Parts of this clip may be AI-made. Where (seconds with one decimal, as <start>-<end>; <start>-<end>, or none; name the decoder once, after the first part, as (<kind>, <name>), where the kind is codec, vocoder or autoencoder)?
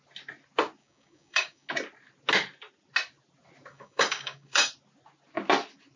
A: 0.8-1.7 (codec, DAC); 3.7-4.7